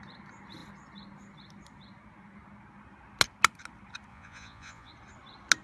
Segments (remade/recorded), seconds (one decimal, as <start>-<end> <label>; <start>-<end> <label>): 0.0-4.1 recorded; 4.1-4.9 remade; 4.9-5.6 recorded